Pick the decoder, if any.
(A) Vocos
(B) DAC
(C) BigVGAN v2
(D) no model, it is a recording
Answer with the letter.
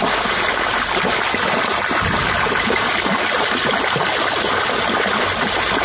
D